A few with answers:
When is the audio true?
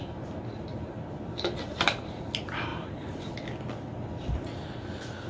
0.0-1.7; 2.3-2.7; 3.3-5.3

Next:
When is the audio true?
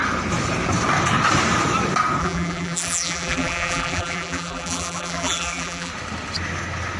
0.0-2.2; 5.9-7.0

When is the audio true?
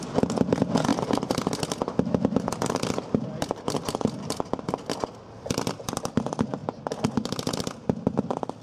0.0-0.9; 1.6-8.6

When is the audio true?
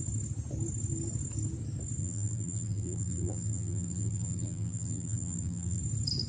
0.0-2.0; 5.8-6.3